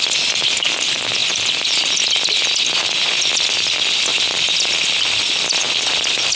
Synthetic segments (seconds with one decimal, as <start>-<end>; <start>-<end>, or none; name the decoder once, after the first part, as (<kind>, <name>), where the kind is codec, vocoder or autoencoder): none